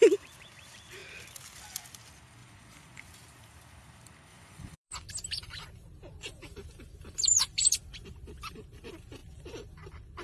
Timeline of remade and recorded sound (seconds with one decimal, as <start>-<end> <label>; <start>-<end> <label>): 0.0-2.4 recorded; 2.4-3.1 remade; 3.1-4.3 recorded; 4.3-5.1 remade; 5.1-10.2 recorded